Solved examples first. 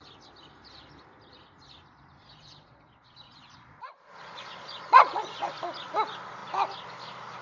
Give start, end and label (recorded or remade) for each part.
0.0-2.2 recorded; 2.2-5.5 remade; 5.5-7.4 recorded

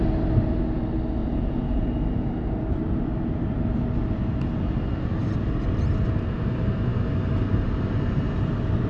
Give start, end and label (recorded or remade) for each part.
0.0-1.2 recorded; 1.2-1.9 remade; 1.9-8.9 recorded

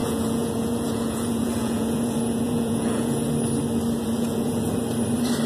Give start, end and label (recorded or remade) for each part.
0.0-3.3 remade; 3.3-4.0 recorded; 4.0-4.8 remade; 4.8-5.5 recorded

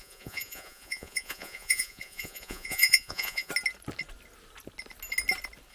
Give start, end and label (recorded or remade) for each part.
0.0-3.5 remade; 3.5-5.7 recorded

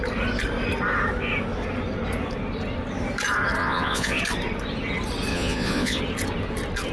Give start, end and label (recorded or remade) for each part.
0.0-3.6 recorded; 3.6-4.2 remade; 4.2-5.3 recorded; 5.3-6.0 remade; 6.0-6.9 recorded

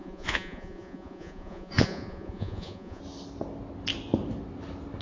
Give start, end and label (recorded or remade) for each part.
0.0-3.0 remade; 3.0-5.0 recorded

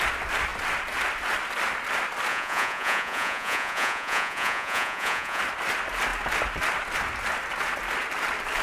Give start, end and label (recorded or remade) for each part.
0.0-2.3 recorded; 2.3-5.4 remade; 5.4-8.6 recorded